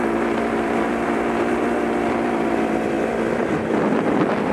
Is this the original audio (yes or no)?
no